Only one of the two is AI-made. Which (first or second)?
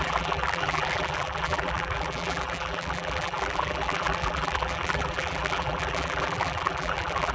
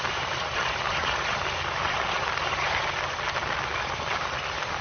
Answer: first